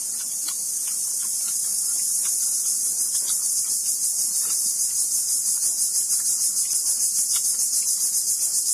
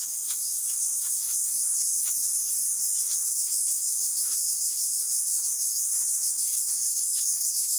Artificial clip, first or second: second